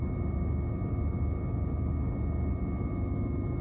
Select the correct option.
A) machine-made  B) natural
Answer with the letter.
B